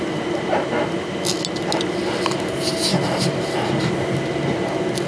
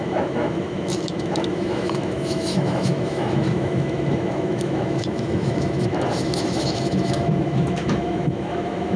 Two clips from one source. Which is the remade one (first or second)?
second